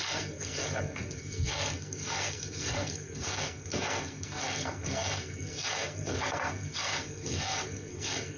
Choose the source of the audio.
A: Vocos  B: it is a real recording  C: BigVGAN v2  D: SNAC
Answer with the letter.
D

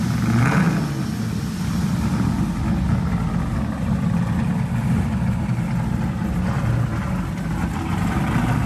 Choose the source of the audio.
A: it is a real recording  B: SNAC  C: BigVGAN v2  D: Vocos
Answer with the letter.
A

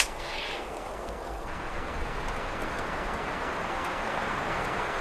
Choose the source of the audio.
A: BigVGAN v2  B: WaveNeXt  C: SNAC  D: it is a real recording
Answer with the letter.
C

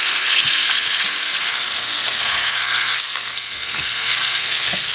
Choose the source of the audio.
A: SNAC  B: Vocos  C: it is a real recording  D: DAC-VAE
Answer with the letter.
A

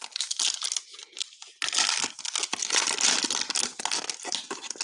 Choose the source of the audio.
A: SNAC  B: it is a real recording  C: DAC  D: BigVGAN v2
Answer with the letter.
B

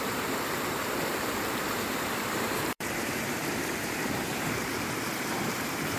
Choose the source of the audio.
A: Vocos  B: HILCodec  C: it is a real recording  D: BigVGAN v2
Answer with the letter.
D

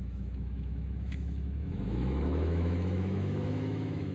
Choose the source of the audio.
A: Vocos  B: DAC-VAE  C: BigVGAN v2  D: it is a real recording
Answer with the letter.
B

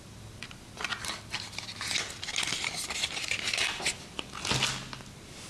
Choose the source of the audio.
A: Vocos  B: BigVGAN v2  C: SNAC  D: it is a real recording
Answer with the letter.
D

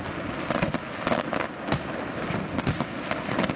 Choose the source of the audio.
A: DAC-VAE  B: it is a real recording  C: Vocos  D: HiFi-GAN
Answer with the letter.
B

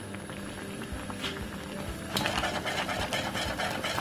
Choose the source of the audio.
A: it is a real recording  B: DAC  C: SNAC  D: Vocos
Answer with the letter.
A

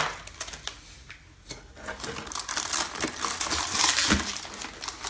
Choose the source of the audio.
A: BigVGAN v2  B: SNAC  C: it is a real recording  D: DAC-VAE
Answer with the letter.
C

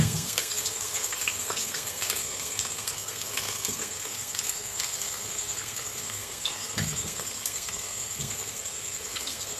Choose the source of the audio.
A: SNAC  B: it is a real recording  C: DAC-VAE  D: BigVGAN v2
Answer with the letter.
A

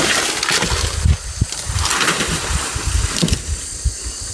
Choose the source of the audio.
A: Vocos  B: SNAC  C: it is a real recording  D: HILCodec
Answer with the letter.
C